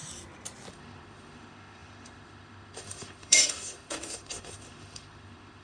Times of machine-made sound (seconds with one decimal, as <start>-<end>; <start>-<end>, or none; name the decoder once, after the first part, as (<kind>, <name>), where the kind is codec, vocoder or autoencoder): 0.7-5.6 (autoencoder, DAC-VAE)